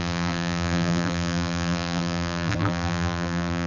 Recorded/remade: remade